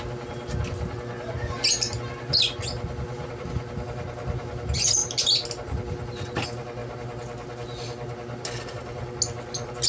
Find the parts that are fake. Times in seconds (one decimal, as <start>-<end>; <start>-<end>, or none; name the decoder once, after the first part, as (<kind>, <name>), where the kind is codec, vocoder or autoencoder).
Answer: none